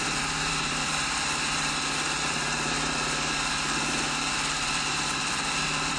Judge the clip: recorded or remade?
remade